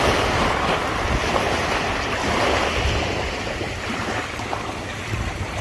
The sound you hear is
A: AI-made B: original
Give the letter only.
B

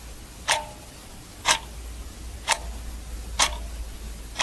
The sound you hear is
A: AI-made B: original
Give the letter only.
B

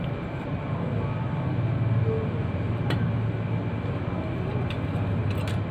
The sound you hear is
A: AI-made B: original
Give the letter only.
B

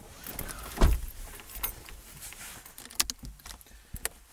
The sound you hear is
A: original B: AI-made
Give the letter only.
A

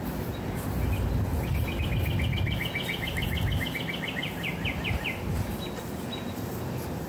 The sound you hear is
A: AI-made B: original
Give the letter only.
B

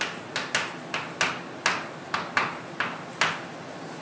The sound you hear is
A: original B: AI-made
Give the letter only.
A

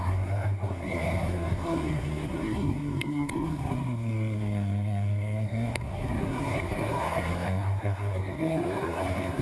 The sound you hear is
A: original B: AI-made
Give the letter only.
B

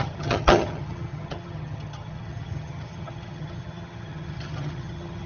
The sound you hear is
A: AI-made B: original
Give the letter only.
A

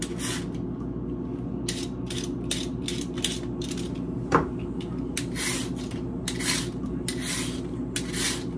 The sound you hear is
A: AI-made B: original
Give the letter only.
B